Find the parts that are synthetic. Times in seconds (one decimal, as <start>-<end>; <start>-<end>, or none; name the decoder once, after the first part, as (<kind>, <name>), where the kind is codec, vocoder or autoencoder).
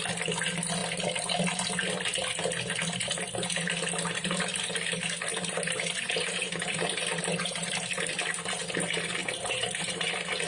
5.3-7.7 (vocoder, BigVGAN v2); 9.2-10.1